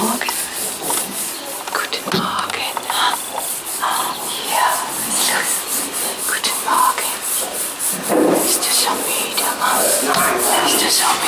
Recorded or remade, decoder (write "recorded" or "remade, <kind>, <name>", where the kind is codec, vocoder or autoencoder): recorded